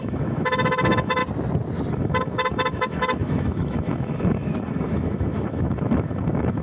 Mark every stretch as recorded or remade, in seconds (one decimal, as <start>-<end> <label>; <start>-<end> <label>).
0.0-1.2 remade; 1.2-1.9 recorded; 1.9-6.6 remade